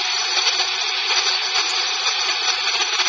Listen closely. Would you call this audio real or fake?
real